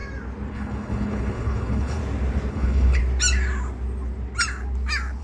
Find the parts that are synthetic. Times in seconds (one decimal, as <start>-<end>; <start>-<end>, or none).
0.5-2.0; 2.5-3.0